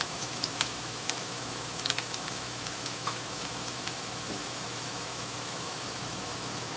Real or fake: fake